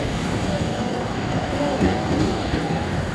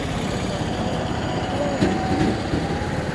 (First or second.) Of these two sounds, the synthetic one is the first